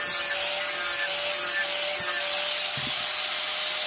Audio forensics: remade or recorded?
recorded